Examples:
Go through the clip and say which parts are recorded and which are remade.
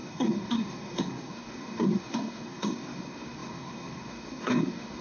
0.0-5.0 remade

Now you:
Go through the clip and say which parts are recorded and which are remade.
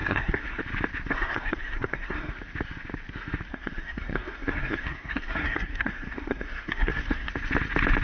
0.0-0.6 remade; 0.6-1.1 recorded; 1.1-2.3 remade; 2.3-3.5 recorded; 3.5-7.3 remade; 7.3-8.0 recorded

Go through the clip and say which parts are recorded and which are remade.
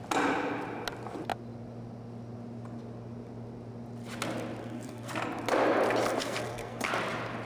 0.0-4.6 recorded; 4.6-5.1 remade; 5.1-6.2 recorded; 6.2-6.9 remade; 6.9-7.5 recorded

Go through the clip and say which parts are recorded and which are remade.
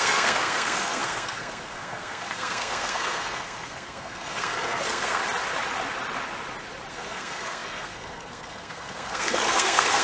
0.0-5.2 remade; 5.2-6.9 recorded; 6.9-10.0 remade